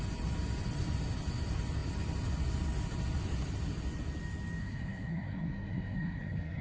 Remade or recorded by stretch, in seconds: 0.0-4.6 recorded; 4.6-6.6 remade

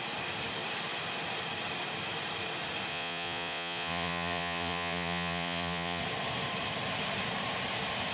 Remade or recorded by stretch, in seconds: 0.0-2.9 recorded; 2.9-6.0 remade; 6.0-8.1 recorded

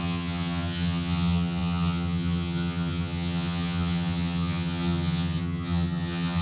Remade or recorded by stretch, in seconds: 0.0-6.4 remade

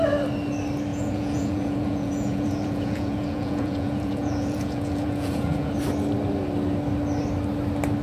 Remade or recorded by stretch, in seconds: 0.0-0.9 recorded; 0.9-5.7 remade; 5.7-8.0 recorded

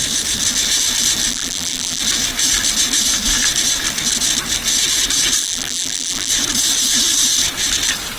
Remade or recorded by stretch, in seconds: 0.0-1.3 recorded; 1.3-2.0 remade; 2.0-5.4 recorded; 5.4-6.3 remade; 6.3-8.2 recorded

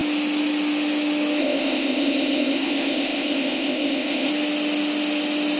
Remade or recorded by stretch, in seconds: 0.0-1.4 recorded; 1.4-4.3 remade; 4.3-5.6 recorded

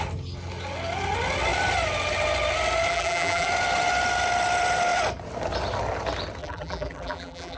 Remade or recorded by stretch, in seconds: 0.0-2.9 recorded; 2.9-3.5 remade; 3.5-6.4 recorded; 6.4-7.6 remade

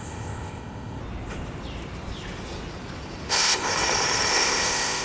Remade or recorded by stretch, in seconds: 0.0-1.0 remade; 1.0-3.3 recorded; 3.3-3.7 remade; 3.7-4.3 recorded; 4.3-5.0 remade